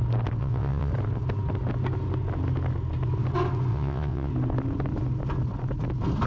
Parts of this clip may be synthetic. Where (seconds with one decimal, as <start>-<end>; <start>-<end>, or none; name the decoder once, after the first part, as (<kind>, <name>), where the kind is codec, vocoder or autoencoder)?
0.4-0.9 (vocoder, WaveNeXt); 3.7-4.3